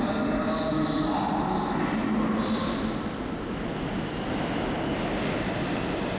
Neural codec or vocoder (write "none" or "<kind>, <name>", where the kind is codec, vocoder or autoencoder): none